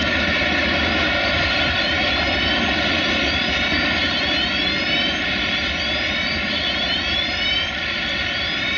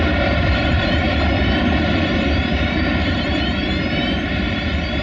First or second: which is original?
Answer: first